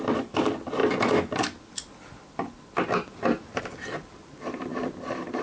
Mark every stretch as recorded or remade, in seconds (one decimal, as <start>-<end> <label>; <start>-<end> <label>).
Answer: 0.0-0.8 remade; 0.8-3.6 recorded; 3.6-4.7 remade; 4.7-5.4 recorded